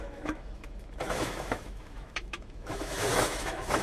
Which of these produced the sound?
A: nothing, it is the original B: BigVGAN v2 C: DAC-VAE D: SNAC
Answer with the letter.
C